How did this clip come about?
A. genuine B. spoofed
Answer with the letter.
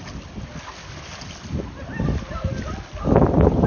A